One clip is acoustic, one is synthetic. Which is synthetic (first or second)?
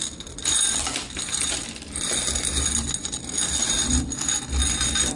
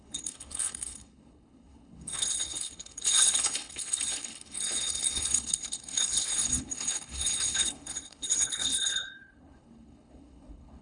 second